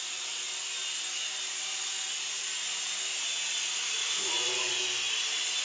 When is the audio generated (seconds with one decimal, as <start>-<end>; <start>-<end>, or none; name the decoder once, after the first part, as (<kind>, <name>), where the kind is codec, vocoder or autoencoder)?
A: 0.0-0.5 (vocoder, Vocos); 3.6-4.8